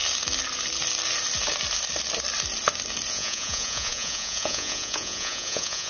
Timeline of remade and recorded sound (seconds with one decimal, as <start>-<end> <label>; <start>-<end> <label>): 0.0-3.1 recorded; 3.1-5.9 remade